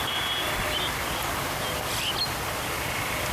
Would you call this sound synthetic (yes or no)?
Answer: no